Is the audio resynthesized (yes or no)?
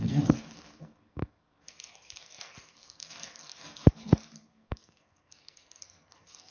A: yes